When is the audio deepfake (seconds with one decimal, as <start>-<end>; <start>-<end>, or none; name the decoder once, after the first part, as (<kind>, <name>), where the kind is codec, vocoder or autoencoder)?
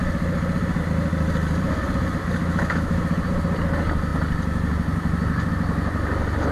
2.4-3.1 (autoencoder, DAC-VAE)